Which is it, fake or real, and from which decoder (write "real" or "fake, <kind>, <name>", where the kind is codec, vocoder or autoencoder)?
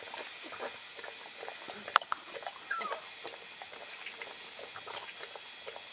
real